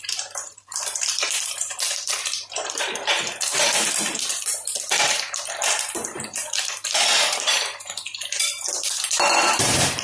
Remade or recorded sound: remade